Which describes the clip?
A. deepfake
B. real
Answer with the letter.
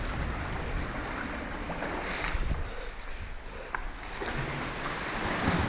B